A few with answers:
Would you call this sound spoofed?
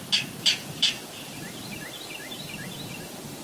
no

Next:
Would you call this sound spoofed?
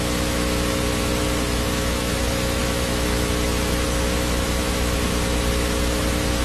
yes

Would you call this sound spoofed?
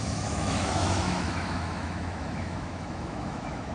yes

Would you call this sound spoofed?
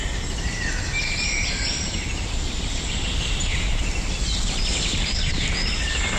no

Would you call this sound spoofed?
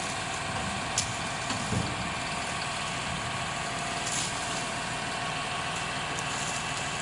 no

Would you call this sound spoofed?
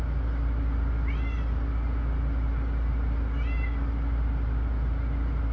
no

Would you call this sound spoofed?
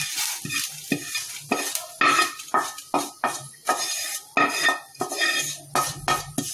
no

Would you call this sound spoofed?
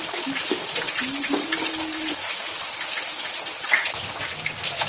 no